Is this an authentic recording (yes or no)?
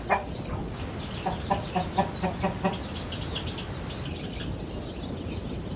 yes